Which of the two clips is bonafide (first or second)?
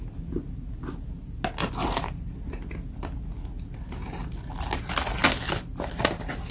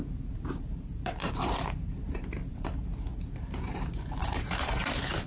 first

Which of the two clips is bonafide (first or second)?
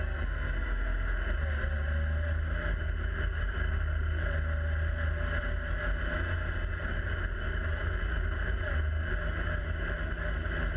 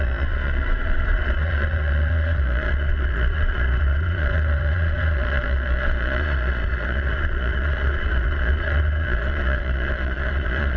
first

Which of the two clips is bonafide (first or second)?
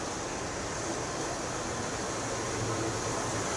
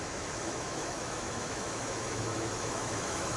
first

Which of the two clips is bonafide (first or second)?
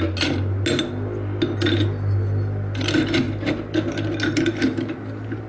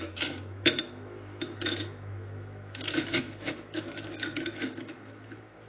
first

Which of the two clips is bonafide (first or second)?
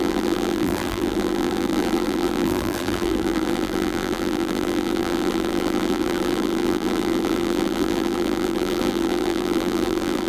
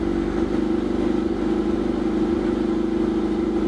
second